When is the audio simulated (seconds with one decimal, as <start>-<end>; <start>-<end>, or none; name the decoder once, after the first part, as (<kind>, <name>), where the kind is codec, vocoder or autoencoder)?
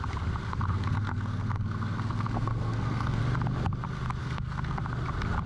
0.4-3.2 (codec, SNAC); 4.2-4.8